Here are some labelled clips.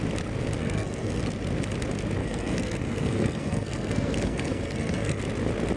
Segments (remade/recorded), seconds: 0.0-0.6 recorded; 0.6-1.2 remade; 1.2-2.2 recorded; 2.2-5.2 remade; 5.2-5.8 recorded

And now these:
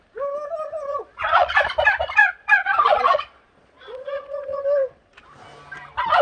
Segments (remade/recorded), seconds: 0.0-0.9 recorded; 0.9-1.6 remade; 1.6-2.2 recorded; 2.2-4.6 remade; 4.6-6.2 recorded

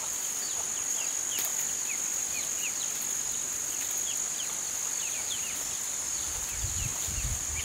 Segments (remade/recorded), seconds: 0.0-7.6 recorded

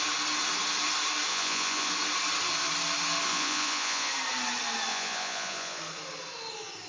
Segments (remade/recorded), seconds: 0.0-1.3 recorded; 1.3-1.9 remade; 1.9-3.3 recorded; 3.3-4.1 remade; 4.1-4.9 recorded; 4.9-5.8 remade; 5.8-6.9 recorded

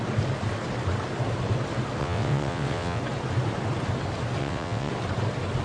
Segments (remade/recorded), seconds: 0.0-2.0 recorded; 2.0-3.0 remade; 3.0-4.4 recorded; 4.4-4.9 remade; 4.9-5.6 recorded

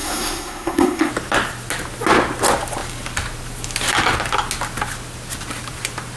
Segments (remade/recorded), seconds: 0.0-1.1 remade; 1.1-6.2 recorded

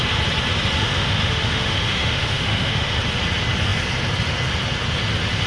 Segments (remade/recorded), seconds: 0.0-0.8 recorded; 0.8-3.0 remade; 3.0-5.5 recorded

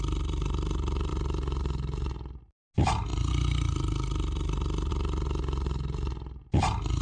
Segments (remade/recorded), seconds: 0.0-7.0 recorded